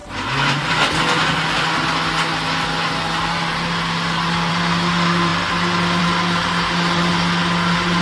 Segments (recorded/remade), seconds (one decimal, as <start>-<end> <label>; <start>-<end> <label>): 0.0-6.4 recorded; 6.4-7.1 remade; 7.1-8.0 recorded